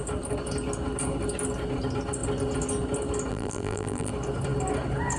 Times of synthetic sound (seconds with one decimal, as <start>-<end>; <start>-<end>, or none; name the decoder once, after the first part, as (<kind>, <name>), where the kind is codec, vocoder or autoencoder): 3.3-4.1 (vocoder, BigVGAN v2)